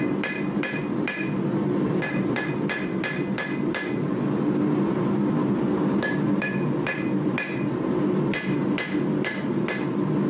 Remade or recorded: recorded